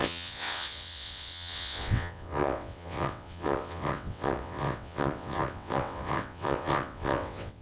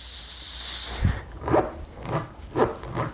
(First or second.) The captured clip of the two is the second